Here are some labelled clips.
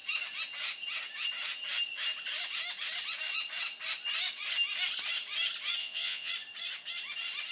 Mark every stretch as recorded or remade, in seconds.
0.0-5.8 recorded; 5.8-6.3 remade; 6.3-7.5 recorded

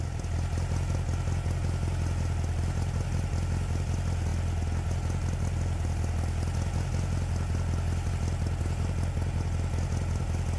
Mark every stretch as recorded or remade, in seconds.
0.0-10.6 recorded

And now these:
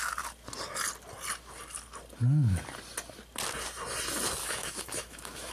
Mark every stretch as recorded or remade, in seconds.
0.0-4.4 recorded; 4.4-5.5 remade

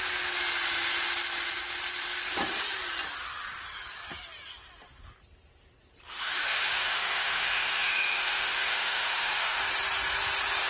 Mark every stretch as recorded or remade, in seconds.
0.0-6.1 recorded; 6.1-9.6 remade; 9.6-10.7 recorded

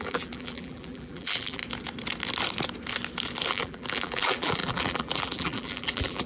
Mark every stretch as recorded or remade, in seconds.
0.0-1.6 remade; 1.6-3.5 recorded; 3.5-6.3 remade

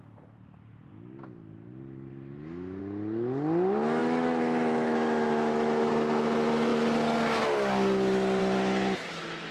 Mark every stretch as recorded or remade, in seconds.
0.0-2.1 recorded; 2.1-2.8 remade; 2.8-4.0 recorded; 4.0-5.9 remade; 5.9-9.5 recorded